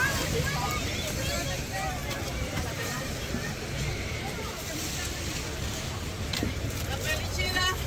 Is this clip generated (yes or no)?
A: yes